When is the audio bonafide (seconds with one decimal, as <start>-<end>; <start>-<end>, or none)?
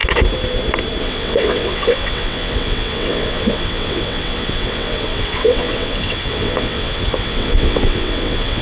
0.0-1.0